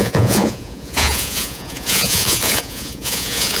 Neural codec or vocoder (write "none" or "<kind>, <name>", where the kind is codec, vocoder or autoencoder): vocoder, Vocos